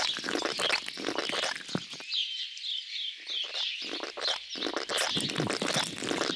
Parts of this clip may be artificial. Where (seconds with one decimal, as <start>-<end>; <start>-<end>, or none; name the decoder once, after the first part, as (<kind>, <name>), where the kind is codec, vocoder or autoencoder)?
none